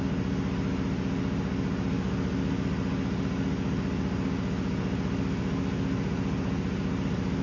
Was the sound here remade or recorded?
recorded